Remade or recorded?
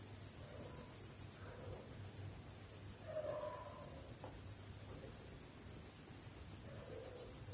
recorded